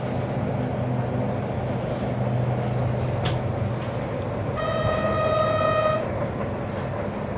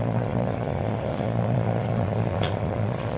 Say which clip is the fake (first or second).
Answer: second